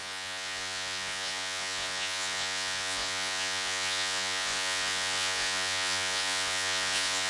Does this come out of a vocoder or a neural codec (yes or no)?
yes